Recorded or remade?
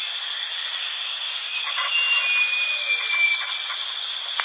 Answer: recorded